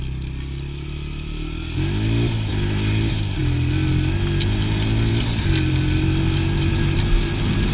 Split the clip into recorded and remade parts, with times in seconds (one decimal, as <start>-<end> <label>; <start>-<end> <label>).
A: 0.0-7.7 recorded